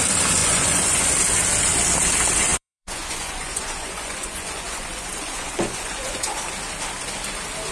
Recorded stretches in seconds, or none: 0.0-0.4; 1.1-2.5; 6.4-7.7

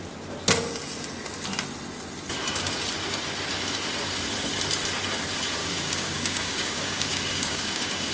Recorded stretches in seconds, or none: 0.0-5.6

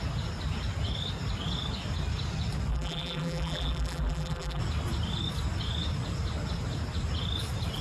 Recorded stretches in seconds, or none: 0.0-2.7; 4.6-7.8